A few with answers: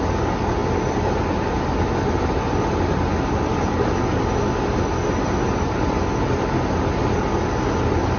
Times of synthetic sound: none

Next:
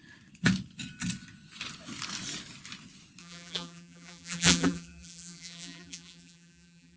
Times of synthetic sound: 3.2-7.0 (vocoder, BigVGAN v2)

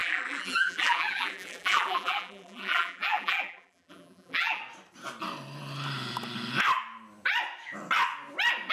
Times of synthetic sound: 0.0-4.6 (vocoder, BigVGAN v2)

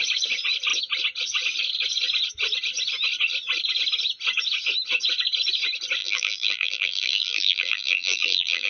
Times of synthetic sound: 6.0-8.7 (vocoder, BigVGAN v2)